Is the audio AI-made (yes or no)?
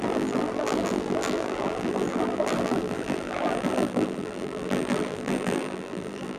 yes